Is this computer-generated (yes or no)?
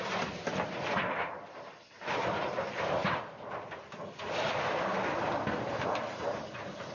no